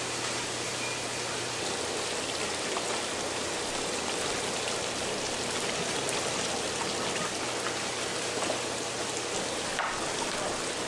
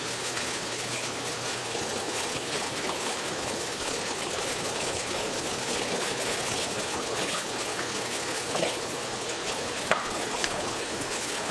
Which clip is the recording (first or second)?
first